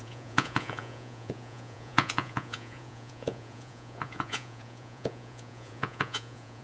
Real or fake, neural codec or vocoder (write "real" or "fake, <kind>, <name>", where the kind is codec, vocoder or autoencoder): fake, vocoder, Vocos